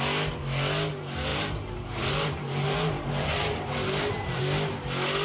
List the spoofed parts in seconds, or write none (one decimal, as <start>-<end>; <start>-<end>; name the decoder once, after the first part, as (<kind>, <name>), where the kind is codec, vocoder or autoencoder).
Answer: 1.3-4.4 (vocoder, BigVGAN v2)